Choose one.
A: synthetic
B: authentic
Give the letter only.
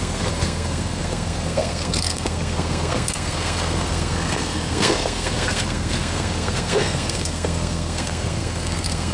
A